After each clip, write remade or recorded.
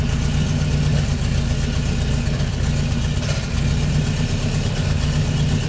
recorded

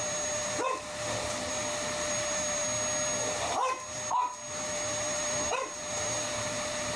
recorded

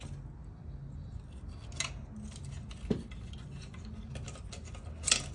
recorded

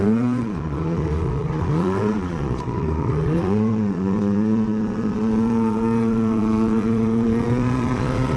remade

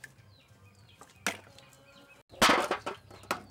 recorded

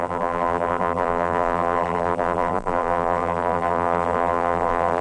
remade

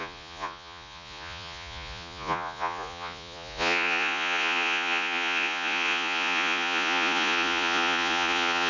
remade